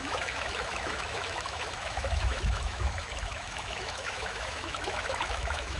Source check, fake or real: fake